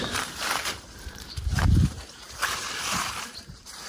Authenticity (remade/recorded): remade